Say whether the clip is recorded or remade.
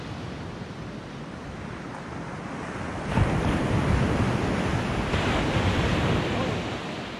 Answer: remade